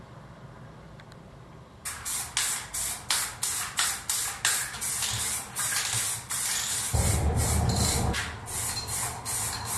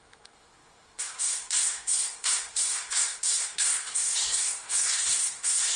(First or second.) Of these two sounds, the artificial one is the second